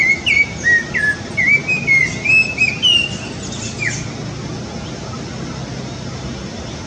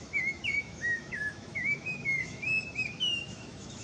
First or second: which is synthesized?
second